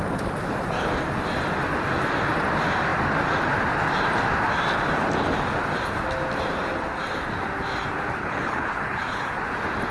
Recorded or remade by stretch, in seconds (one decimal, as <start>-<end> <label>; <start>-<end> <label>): 0.0-8.2 recorded; 8.2-9.4 remade; 9.4-9.9 recorded